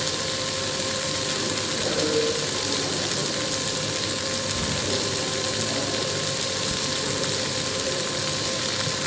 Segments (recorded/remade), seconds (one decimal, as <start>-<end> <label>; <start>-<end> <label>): 0.0-9.1 recorded